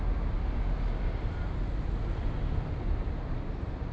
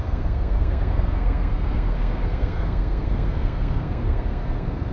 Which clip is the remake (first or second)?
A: second